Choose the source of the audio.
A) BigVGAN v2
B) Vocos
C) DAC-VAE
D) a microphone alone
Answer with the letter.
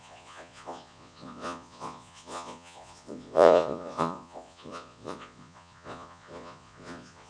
B